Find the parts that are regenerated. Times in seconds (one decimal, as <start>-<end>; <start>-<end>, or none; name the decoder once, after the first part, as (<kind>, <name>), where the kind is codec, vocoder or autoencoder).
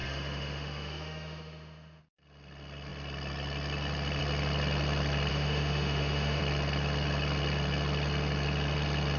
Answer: 0.0-2.0 (autoencoder, DAC-VAE); 5.3-6.4